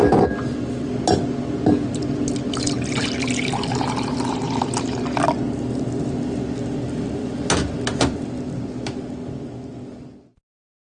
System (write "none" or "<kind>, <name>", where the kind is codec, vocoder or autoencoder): none